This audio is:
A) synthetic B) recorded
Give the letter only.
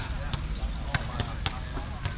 B